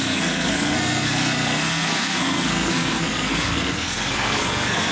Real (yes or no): no